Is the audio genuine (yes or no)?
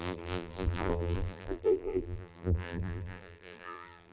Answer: no